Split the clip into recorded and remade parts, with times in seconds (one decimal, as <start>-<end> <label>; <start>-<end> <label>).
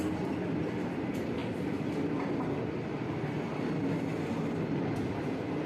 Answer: 0.0-5.7 recorded